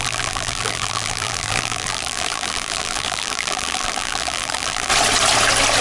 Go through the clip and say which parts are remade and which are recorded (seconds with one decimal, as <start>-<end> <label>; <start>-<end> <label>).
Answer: 0.0-4.9 remade; 4.9-5.8 recorded